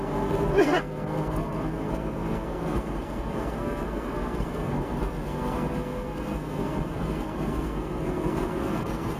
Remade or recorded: remade